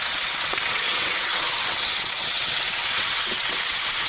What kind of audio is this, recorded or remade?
remade